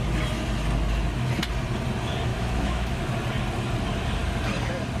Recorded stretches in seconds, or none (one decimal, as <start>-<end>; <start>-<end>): 0.0-2.3; 3.1-5.0